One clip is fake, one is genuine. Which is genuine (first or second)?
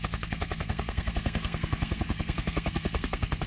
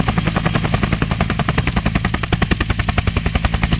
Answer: second